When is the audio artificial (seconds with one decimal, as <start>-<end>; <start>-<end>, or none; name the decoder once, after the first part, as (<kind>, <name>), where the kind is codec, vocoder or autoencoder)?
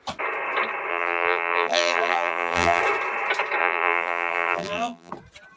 0.9-2.8 (vocoder, BigVGAN v2); 3.6-5.1